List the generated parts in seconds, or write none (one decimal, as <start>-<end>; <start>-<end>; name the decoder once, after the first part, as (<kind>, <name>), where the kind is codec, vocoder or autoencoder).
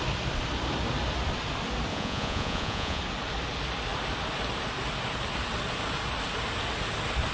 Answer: 1.9-3.0 (vocoder, Vocos)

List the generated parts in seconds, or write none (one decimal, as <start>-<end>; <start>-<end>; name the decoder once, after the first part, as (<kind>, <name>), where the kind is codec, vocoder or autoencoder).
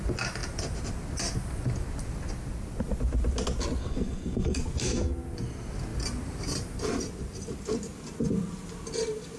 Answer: 3.8-4.6 (codec, SNAC)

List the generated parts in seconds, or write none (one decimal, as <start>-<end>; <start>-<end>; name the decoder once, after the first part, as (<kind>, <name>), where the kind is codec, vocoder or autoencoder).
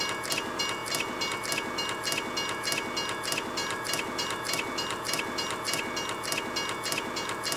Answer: 3.6-5.8 (vocoder, BigVGAN v2)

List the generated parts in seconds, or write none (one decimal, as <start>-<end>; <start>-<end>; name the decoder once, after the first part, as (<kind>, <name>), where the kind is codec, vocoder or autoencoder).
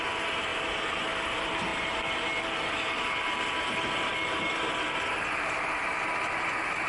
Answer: none